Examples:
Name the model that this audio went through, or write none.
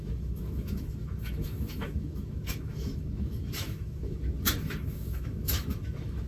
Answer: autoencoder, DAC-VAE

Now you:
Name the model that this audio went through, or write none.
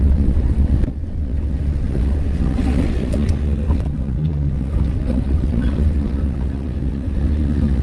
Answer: vocoder, WaveNeXt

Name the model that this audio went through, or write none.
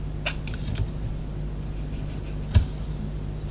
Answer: none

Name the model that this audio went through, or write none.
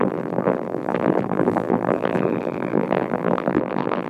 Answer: vocoder, BigVGAN v2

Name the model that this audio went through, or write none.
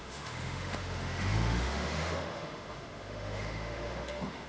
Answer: autoencoder, DAC-VAE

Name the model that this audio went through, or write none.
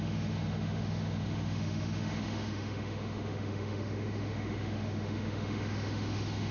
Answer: autoencoder, DAC-VAE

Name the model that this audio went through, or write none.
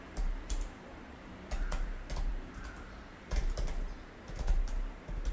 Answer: vocoder, BigVGAN v2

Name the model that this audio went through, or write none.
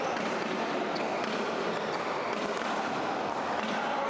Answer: none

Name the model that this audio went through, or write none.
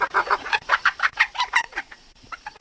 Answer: vocoder, Vocos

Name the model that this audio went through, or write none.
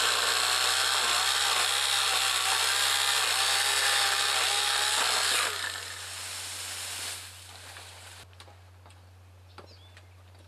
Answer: none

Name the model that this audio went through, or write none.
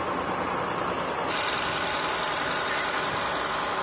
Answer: none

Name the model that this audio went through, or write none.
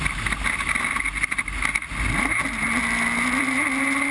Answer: none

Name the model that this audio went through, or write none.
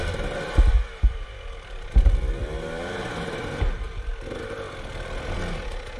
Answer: vocoder, BigVGAN v2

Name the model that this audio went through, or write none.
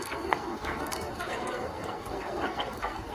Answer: codec, SNAC